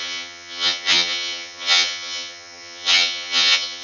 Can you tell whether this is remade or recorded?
remade